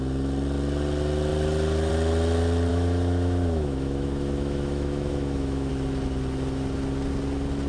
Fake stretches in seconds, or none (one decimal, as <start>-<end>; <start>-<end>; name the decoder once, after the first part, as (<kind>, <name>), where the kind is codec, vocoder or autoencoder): 2.7-5.7 (autoencoder, DAC-VAE)